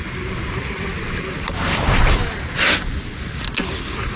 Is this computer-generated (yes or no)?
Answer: no